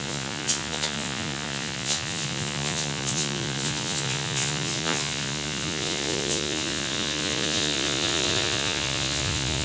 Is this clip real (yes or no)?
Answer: no